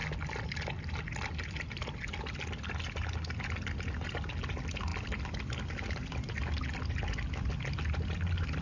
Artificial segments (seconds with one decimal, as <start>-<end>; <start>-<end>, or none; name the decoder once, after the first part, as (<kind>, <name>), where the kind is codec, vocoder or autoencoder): none